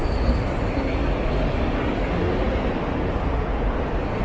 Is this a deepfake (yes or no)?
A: no